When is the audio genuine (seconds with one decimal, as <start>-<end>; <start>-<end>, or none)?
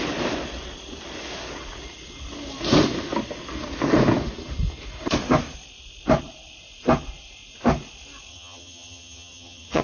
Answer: 0.0-8.3